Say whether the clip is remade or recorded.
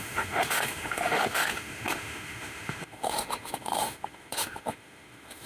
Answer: remade